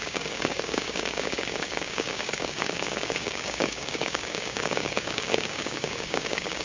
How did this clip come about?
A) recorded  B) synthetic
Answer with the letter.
B